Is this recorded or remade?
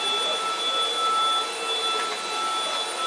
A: recorded